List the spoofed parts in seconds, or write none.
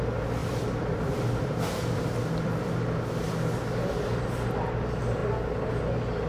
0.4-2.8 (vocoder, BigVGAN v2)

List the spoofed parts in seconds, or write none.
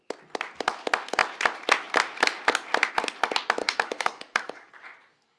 3.6-4.7 (codec, DAC)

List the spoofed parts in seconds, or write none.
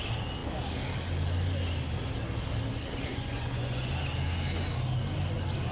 3.1-3.9 (vocoder, Vocos)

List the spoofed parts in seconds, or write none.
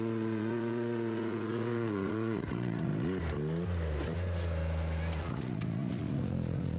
0.0-2.9 (vocoder, Vocos); 5.2-6.8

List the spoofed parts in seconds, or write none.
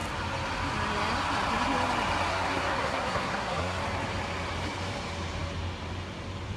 2.3-3.8 (codec, SNAC)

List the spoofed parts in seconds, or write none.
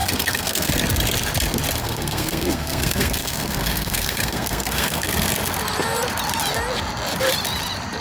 0.0-0.7 (codec, SNAC); 1.8-5.1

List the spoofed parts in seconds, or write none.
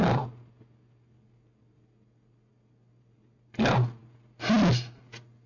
none